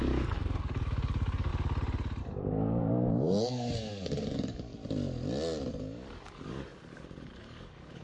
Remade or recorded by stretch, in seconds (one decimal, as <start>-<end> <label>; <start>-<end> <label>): 0.0-1.5 remade; 1.5-2.2 recorded; 2.2-4.7 remade; 4.7-5.7 recorded; 5.7-8.0 remade